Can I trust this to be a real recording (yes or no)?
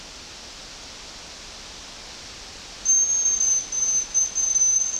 yes